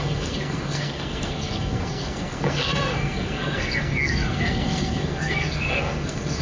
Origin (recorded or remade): remade